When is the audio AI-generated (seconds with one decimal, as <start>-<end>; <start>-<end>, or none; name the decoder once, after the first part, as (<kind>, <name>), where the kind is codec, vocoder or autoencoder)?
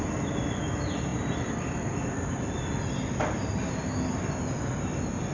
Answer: none